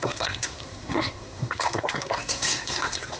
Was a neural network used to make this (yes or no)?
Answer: yes